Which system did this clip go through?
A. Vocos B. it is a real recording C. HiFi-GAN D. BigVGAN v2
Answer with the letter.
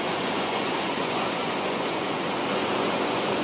A